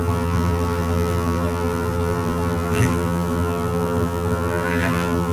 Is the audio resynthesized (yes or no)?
yes